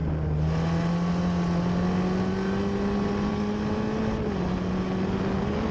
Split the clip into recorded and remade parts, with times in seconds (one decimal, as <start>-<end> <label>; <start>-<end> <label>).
0.0-5.7 recorded